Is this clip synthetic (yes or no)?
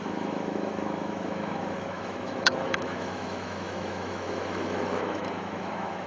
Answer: yes